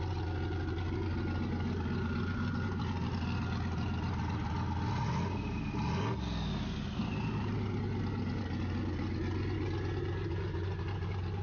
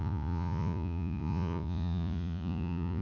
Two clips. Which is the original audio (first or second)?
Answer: first